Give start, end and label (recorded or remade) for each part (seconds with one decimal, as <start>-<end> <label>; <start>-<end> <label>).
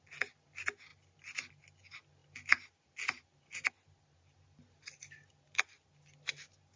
0.0-6.8 recorded